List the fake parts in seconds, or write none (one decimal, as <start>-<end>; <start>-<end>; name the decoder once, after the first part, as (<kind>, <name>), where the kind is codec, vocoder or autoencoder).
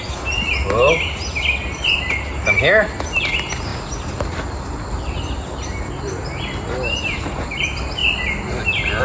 none